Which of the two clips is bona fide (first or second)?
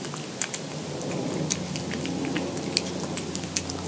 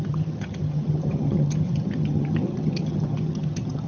first